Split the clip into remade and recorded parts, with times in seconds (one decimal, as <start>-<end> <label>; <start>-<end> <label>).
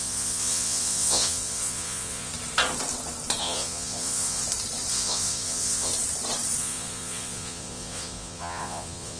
0.0-2.3 remade; 2.3-3.4 recorded; 3.4-4.4 remade; 4.4-4.9 recorded; 4.9-5.9 remade; 5.9-6.6 recorded; 6.6-9.2 remade